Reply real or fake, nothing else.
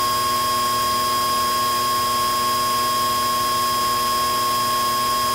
real